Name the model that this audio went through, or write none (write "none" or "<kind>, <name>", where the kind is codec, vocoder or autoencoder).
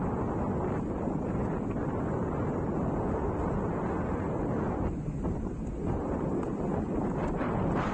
none